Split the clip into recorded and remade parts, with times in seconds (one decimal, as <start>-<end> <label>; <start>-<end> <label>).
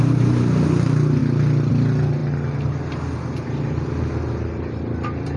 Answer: 0.0-5.4 recorded